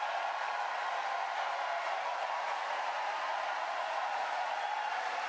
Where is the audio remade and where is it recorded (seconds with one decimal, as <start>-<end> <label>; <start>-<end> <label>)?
0.0-2.1 recorded; 2.1-4.5 remade; 4.5-5.3 recorded